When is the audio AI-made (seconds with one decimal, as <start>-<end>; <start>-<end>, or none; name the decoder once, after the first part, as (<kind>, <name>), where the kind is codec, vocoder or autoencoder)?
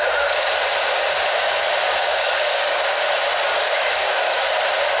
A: 2.1-3.0 (codec, DAC); 3.5-4.5